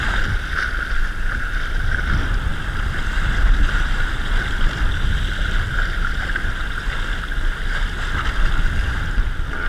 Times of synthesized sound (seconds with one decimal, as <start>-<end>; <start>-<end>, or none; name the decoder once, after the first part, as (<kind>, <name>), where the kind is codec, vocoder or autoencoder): none